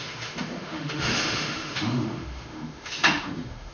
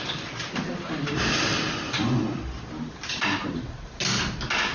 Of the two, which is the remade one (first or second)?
first